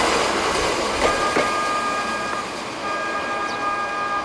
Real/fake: real